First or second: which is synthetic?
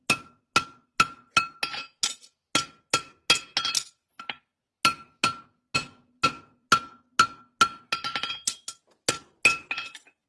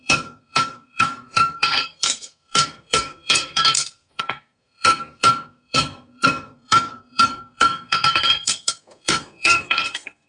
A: second